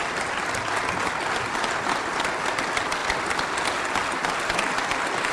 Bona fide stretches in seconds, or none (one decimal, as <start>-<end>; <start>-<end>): 0.0-5.3